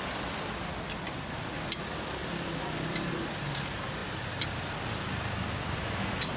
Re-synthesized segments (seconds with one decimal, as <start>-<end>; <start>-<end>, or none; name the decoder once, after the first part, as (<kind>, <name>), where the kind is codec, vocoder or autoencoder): none